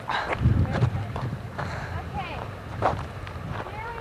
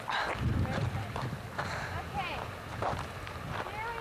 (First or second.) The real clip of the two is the second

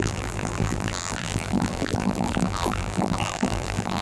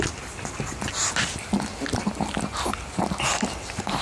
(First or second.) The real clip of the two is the second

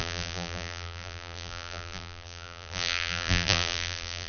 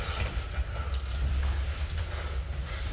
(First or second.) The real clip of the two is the second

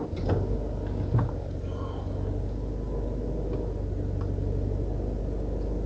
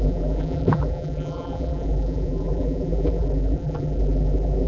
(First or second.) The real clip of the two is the first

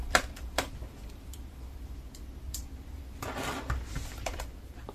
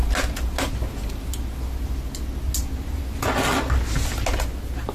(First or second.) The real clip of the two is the second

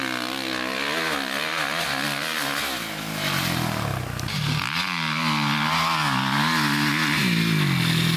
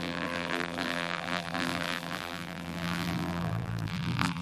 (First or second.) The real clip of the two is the first